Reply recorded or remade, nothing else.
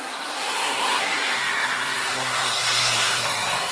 remade